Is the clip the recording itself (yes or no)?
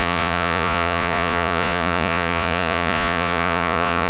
no